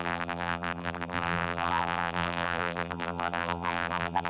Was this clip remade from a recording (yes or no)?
yes